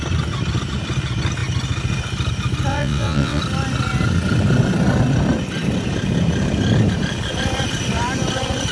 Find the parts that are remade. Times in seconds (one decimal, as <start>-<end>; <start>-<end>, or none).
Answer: 2.7-3.4